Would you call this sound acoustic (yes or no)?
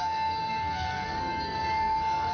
no